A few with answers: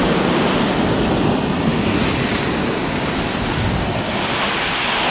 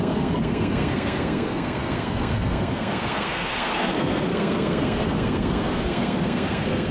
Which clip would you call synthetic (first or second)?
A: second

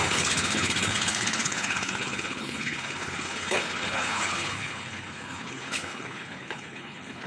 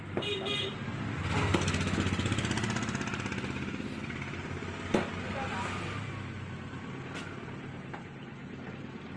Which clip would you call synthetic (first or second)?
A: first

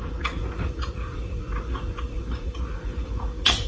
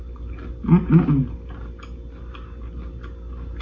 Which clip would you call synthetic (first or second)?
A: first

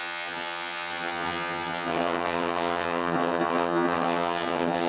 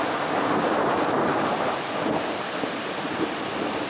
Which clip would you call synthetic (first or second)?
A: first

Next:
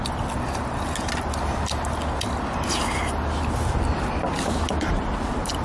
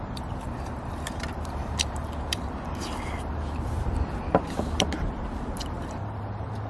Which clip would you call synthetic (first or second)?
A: second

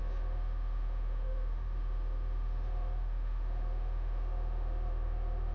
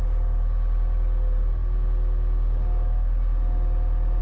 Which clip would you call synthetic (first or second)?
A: first